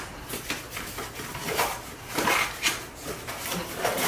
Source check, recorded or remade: recorded